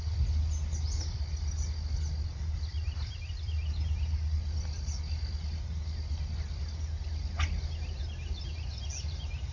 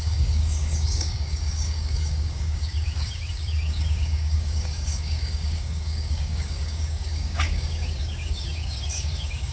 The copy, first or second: second